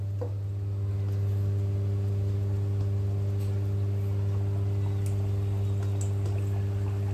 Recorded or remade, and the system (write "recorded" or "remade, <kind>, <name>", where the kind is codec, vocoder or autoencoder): recorded